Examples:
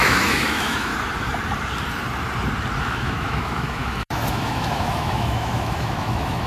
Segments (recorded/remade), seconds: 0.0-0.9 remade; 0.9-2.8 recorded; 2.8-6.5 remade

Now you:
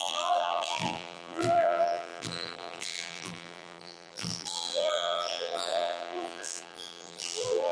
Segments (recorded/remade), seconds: 0.0-7.7 remade

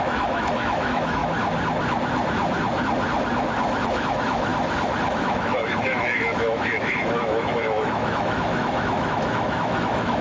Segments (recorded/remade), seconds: 0.0-1.2 remade; 1.2-3.9 recorded; 3.9-4.5 remade; 4.5-5.1 recorded; 5.1-10.2 remade